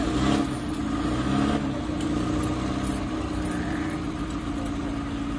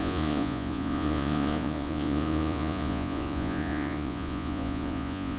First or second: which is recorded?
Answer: first